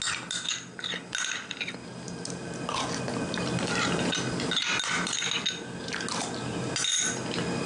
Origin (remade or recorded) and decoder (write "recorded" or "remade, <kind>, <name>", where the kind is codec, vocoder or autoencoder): recorded